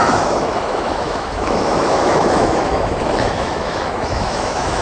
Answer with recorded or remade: remade